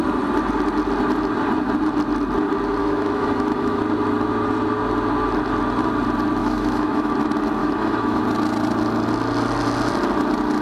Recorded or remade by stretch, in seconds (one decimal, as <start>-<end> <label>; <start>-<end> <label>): 0.0-2.8 recorded; 2.8-3.8 remade; 3.8-6.4 recorded; 6.4-7.1 remade; 7.1-7.6 recorded; 7.6-8.2 remade; 8.2-10.6 recorded